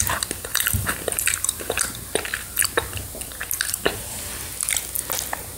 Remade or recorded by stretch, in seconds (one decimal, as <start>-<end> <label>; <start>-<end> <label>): 0.0-0.5 recorded; 0.5-1.8 remade; 1.8-5.6 recorded